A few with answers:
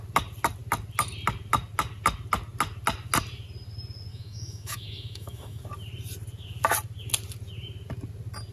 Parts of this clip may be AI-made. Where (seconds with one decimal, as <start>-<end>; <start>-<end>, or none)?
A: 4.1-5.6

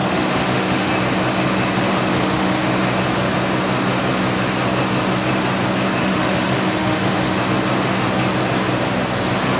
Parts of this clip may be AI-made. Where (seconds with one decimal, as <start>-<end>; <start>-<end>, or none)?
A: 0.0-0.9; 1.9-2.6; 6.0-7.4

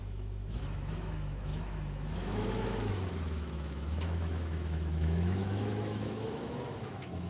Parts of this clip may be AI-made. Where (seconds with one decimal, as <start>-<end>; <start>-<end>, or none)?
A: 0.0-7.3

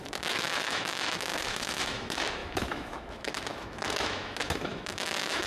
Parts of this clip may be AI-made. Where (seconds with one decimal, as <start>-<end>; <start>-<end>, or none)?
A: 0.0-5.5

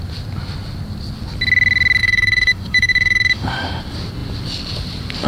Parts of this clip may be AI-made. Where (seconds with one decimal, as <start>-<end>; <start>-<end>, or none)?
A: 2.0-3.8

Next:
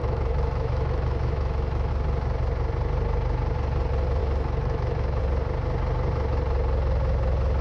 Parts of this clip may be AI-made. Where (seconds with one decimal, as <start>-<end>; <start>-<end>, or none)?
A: 0.0-1.9; 4.2-5.2

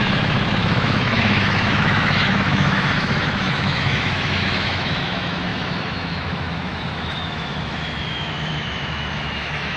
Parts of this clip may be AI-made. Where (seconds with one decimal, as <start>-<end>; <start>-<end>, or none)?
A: 0.0-9.8